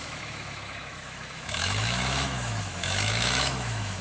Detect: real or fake fake